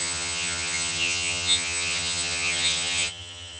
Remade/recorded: remade